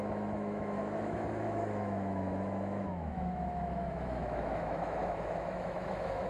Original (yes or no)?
no